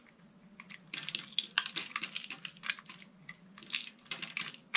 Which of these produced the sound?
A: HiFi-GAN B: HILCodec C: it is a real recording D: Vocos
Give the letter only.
C